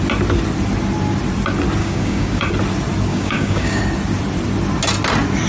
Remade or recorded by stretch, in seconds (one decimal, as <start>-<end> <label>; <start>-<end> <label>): 0.0-1.8 recorded; 1.8-2.5 remade; 2.5-3.1 recorded; 3.1-3.8 remade; 3.8-5.5 recorded